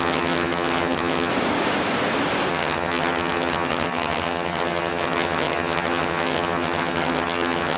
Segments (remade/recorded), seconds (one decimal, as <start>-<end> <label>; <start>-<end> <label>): 0.0-1.3 remade; 1.3-2.5 recorded; 2.5-7.8 remade